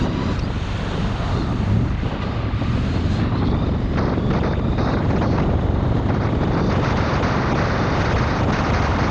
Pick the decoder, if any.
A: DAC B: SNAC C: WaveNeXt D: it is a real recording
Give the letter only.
D